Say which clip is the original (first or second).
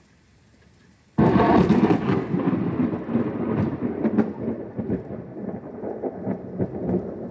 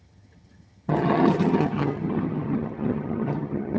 first